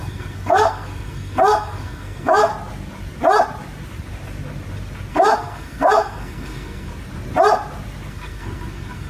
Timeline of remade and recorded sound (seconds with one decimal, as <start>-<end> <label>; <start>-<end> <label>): 0.0-2.5 remade; 2.5-5.1 recorded; 5.1-6.9 remade; 6.9-8.1 recorded; 8.1-9.1 remade